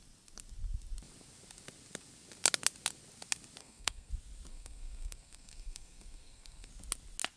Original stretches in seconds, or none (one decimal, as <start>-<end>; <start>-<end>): 0.0-3.6; 4.1-4.5; 6.7-7.4